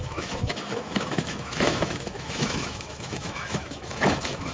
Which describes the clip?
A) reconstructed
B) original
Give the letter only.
A